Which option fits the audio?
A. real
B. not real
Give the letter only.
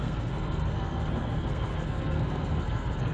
B